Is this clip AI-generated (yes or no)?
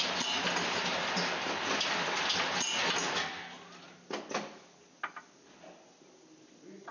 no